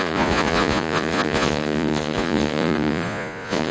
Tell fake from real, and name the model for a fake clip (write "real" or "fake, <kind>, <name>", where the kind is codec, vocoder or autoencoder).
fake, vocoder, Vocos